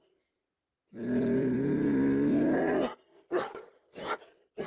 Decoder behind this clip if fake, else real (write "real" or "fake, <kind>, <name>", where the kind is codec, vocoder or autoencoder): fake, vocoder, BigVGAN v2